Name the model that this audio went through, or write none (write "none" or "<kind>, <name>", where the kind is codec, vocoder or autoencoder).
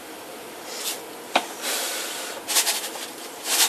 vocoder, BigVGAN v2